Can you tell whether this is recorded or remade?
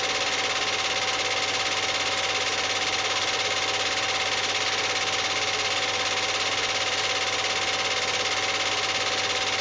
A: recorded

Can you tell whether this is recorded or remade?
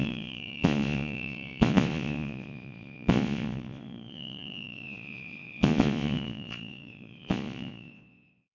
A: remade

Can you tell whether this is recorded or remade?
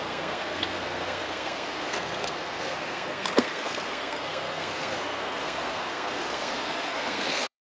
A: remade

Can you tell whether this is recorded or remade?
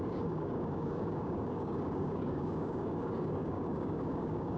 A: remade